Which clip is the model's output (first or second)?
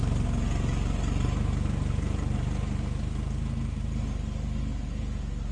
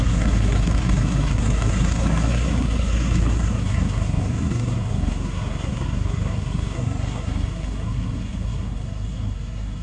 second